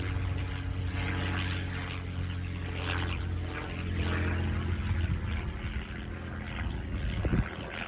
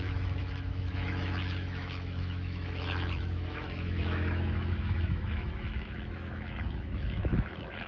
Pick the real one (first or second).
first